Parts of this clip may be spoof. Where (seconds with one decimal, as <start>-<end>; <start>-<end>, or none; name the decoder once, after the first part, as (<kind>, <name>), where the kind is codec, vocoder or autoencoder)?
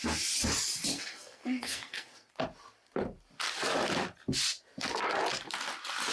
0.9-2.3 (codec, SNAC)